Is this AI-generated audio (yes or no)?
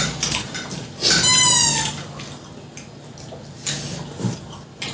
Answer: no